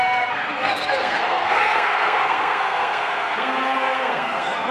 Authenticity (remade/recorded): remade